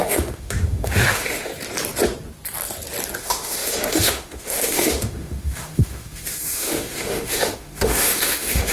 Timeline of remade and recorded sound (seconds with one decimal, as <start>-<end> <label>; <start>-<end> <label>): 0.0-1.5 remade; 1.5-3.2 recorded; 3.2-8.7 remade